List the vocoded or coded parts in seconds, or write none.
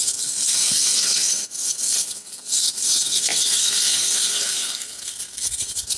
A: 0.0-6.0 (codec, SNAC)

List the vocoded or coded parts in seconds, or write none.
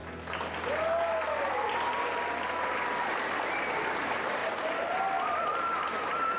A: none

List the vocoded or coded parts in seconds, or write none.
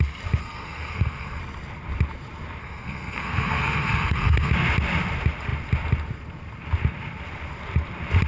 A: 0.4-1.4 (codec, SNAC); 2.6-4.5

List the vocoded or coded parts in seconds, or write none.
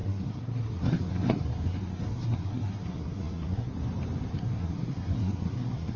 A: 0.0-3.7 (codec, SNAC); 4.3-6.0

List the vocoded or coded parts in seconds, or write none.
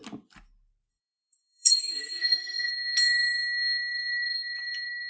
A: 0.9-2.7 (codec, SNAC)